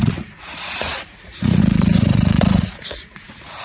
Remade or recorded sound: remade